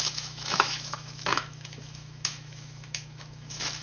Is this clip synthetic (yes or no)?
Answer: yes